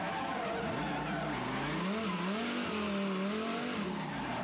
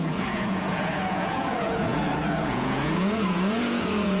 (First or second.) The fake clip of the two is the second